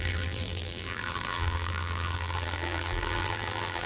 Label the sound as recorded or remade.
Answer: remade